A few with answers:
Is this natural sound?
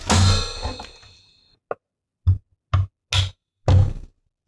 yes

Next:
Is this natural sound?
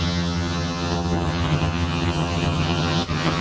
no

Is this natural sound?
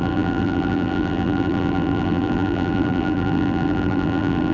no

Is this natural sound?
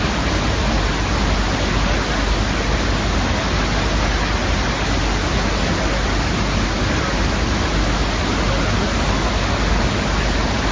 yes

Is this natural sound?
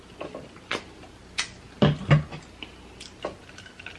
yes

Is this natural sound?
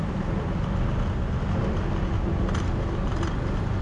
yes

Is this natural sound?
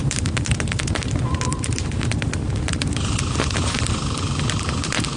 no